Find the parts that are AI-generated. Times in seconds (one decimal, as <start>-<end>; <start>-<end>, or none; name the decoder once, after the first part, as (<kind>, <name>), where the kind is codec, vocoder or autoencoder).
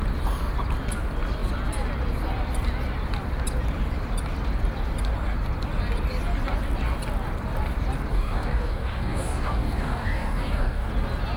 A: 8.1-10.9 (codec, DAC)